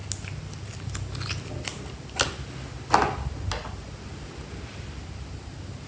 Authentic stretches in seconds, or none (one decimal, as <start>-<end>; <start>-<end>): 0.0-5.9